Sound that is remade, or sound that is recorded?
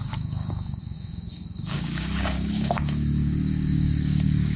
remade